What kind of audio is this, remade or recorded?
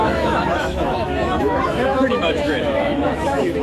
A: remade